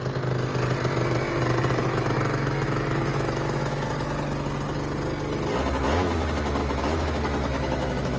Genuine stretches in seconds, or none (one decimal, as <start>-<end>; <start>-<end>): 0.0-1.8; 3.9-6.6